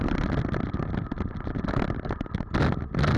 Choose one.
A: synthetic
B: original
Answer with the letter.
B